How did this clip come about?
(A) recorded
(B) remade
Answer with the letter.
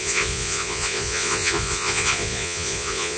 B